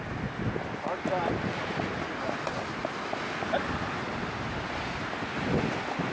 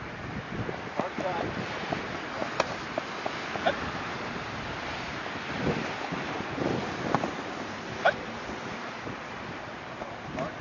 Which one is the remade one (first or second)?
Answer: second